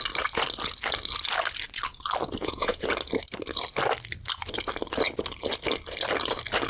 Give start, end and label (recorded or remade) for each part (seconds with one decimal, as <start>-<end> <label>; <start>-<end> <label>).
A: 0.0-2.4 recorded; 2.4-2.9 remade; 2.9-6.7 recorded